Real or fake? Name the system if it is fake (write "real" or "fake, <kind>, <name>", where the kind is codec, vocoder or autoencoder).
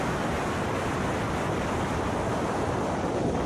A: real